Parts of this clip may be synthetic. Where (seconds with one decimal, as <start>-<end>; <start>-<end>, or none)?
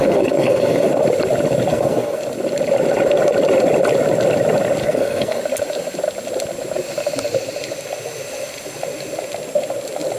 0.0-0.9; 1.7-2.2; 4.8-5.4